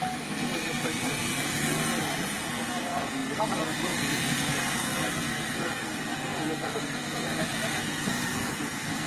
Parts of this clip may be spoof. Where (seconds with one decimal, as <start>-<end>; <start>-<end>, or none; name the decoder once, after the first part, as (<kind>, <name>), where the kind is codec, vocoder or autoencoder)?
0.0-1.8 (codec, SNAC); 2.5-9.1